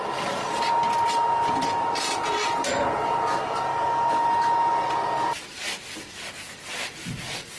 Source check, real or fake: fake